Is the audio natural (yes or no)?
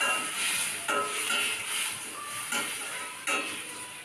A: no